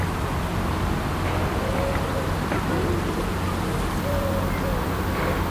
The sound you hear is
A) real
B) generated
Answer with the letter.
A